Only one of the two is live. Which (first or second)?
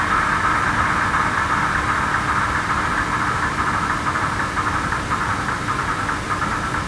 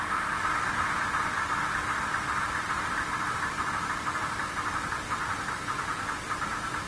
first